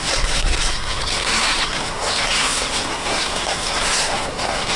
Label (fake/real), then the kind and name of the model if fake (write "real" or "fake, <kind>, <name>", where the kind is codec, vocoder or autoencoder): fake, codec, SNAC